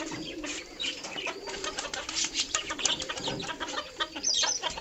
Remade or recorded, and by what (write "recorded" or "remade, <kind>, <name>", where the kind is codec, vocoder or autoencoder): remade, vocoder, BigVGAN v2